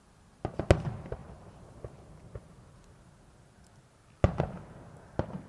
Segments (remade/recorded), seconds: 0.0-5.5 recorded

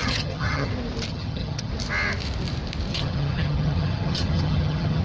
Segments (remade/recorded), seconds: 0.0-0.7 remade; 0.7-1.1 recorded; 1.1-1.7 remade; 1.7-2.9 recorded; 2.9-5.0 remade

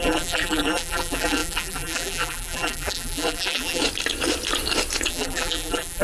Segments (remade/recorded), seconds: 0.0-3.8 remade; 3.8-5.1 recorded; 5.1-6.0 remade

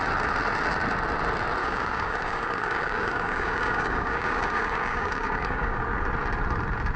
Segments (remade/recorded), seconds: 0.0-1.6 recorded; 1.6-5.8 remade; 5.8-7.0 recorded

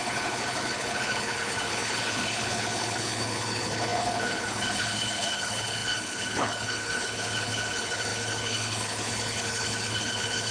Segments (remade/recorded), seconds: 0.0-10.5 remade

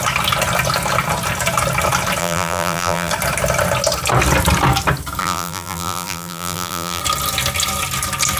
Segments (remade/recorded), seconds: 0.0-2.2 recorded; 2.2-3.1 remade; 3.1-5.2 recorded; 5.2-7.0 remade; 7.0-8.4 recorded

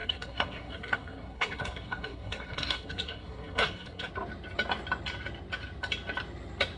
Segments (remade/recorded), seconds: 0.0-4.1 remade; 4.1-6.8 recorded

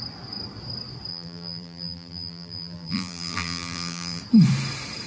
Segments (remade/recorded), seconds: 0.0-1.1 recorded; 1.1-4.2 remade; 4.2-5.1 recorded